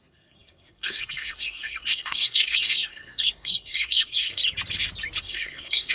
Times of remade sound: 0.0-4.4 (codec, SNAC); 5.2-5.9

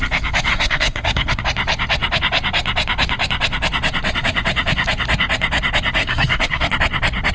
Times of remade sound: 0.5-1.4 (codec, SNAC); 6.0-6.7

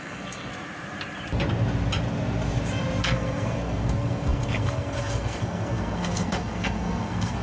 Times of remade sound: 0.0-0.5 (codec, SNAC); 3.0-7.4

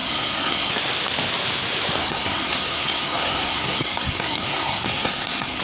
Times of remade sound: 0.0-0.7 (codec, SNAC); 2.0-5.6

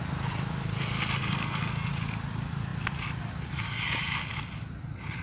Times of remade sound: 1.2-1.9 (codec, SNAC)

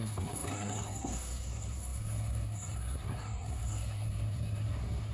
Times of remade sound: 0.0-5.1 (codec, SNAC)

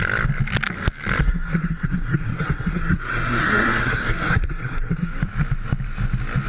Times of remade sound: 1.2-5.1 (codec, SNAC)

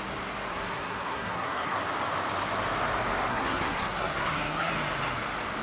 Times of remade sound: 0.5-1.8 (codec, SNAC); 3.3-4.7